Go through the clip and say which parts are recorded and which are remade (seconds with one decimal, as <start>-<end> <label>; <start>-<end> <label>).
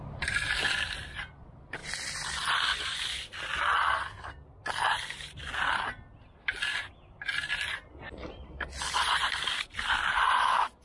0.0-10.8 recorded